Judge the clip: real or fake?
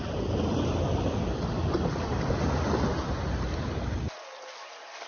real